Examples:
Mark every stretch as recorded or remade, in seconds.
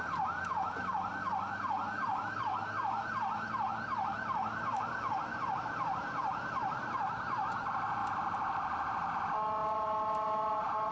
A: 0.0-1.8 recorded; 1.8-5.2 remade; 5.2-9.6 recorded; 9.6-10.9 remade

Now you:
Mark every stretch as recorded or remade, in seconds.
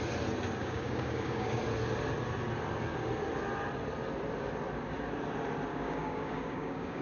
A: 0.0-0.6 recorded; 0.6-1.6 remade; 1.6-5.7 recorded; 5.7-7.0 remade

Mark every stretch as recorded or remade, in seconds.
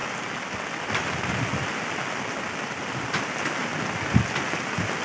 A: 0.0-5.0 recorded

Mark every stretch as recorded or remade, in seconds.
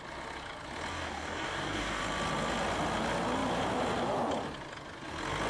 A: 0.0-0.9 recorded; 0.9-2.0 remade; 2.0-5.5 recorded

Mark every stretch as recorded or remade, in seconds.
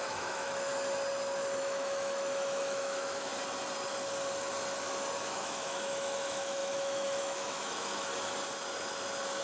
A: 0.0-0.7 remade; 0.7-1.6 recorded; 1.6-3.3 remade; 3.3-5.2 recorded; 5.2-8.1 remade; 8.1-9.4 recorded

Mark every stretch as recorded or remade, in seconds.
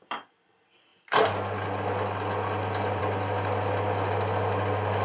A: 0.0-5.0 recorded